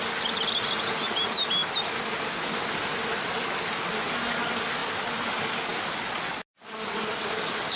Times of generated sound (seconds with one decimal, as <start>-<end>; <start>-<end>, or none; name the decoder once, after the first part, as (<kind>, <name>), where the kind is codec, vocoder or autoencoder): none